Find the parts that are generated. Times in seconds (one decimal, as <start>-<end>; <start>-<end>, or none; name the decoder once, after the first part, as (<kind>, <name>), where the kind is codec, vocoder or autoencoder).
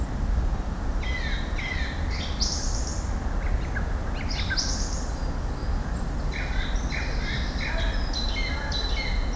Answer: none